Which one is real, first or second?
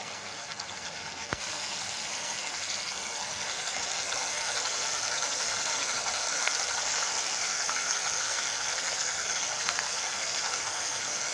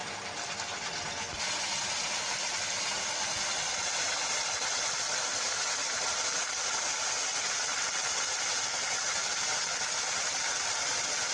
second